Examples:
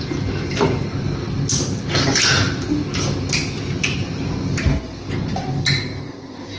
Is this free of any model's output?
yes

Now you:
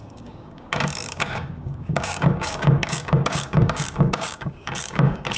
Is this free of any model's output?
no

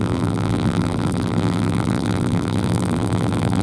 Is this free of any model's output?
no